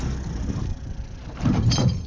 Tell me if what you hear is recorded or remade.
recorded